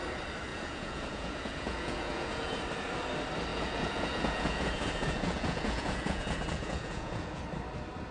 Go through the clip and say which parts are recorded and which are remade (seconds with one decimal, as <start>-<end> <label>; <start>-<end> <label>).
0.0-0.5 recorded; 0.5-2.6 remade; 2.6-3.5 recorded; 3.5-7.4 remade; 7.4-8.1 recorded